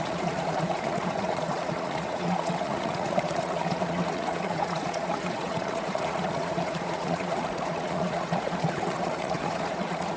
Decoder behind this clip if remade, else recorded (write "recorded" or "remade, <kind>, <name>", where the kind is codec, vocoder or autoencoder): remade, vocoder, Vocos